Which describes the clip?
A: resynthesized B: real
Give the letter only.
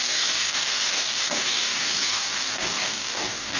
A